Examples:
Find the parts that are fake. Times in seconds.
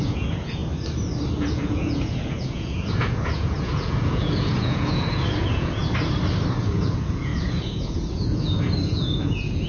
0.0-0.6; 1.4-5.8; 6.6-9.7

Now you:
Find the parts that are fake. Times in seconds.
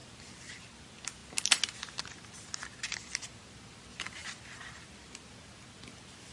none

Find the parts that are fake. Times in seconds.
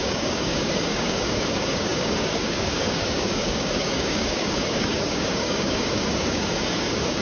0.0-7.2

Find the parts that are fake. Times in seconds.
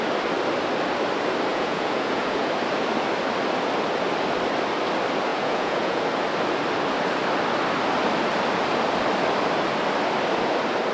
1.5-2.5; 5.3-6.0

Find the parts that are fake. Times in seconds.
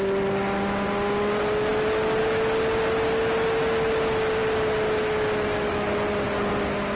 none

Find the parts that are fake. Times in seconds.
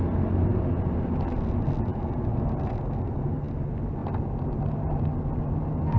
none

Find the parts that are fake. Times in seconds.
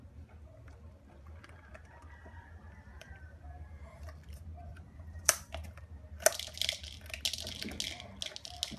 2.2-3.9; 4.7-5.9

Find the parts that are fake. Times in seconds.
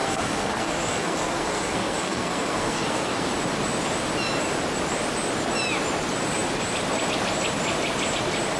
0.0-3.3